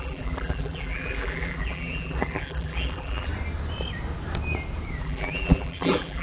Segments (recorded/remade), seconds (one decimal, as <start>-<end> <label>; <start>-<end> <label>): 0.0-3.3 remade; 3.3-5.0 recorded; 5.0-6.2 remade